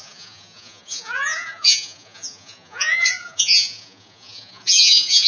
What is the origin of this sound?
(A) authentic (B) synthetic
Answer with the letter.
B